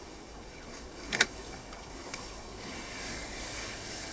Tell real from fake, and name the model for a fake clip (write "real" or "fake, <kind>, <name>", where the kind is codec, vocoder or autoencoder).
fake, codec, DAC